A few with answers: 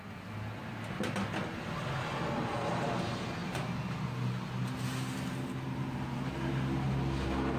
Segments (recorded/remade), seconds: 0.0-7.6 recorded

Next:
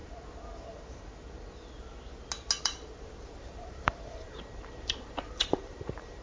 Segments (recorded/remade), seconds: 0.0-2.6 recorded; 2.6-6.2 remade

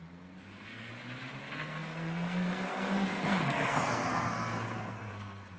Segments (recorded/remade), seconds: 0.0-0.9 remade; 0.9-1.4 recorded; 1.4-5.6 remade

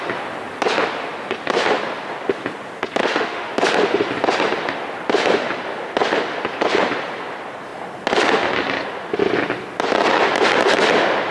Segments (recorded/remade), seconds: 0.0-3.0 recorded; 3.0-3.5 remade; 3.5-11.3 recorded

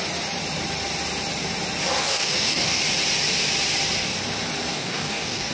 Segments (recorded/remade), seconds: 0.0-2.0 recorded; 2.0-2.8 remade; 2.8-4.7 recorded; 4.7-5.5 remade